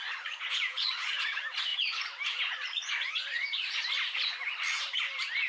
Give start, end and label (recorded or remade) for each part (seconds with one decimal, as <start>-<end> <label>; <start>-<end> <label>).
0.0-3.8 remade; 3.8-5.5 recorded